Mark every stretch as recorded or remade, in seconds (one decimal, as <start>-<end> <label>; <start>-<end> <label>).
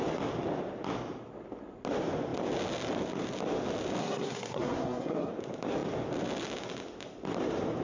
0.0-4.0 recorded; 4.0-5.3 remade; 5.3-7.8 recorded